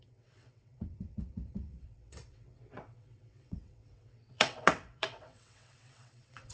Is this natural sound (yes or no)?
no